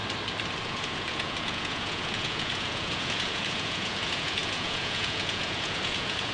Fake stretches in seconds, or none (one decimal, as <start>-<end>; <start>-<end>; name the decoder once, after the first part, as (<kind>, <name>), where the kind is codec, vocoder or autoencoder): 0.6-6.3 (vocoder, Vocos)